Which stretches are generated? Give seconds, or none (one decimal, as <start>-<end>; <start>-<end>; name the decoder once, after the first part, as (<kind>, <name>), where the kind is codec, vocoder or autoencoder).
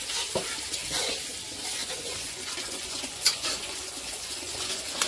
0.8-1.3 (vocoder, Vocos); 1.8-5.1